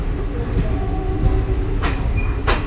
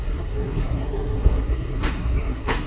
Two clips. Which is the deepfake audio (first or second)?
second